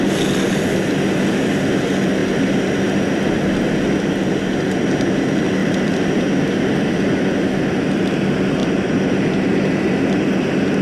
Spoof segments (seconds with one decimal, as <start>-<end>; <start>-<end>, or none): 5.6-6.3; 8.6-9.1